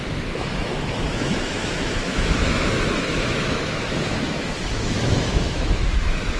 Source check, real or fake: fake